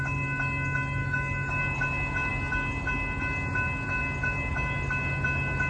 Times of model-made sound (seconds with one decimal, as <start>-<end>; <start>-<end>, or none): 1.0-1.6